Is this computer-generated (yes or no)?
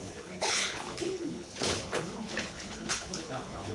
yes